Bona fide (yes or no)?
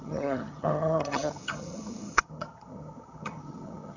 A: no